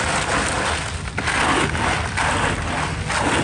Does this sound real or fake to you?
real